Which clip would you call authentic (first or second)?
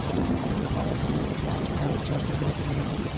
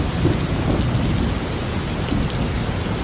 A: second